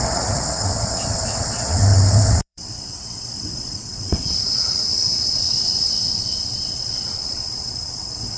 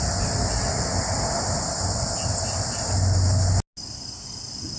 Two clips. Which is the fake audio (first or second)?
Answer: first